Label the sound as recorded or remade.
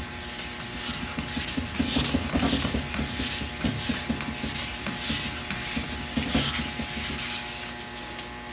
recorded